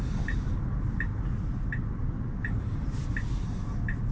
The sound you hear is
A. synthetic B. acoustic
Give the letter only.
B